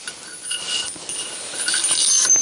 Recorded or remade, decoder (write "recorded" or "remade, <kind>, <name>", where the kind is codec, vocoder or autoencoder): recorded